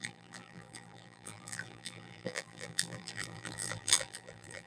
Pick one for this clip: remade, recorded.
remade